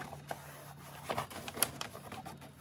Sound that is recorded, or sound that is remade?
recorded